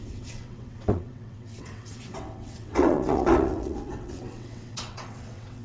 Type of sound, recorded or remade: remade